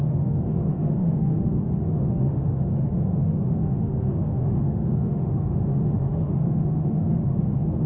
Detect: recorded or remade remade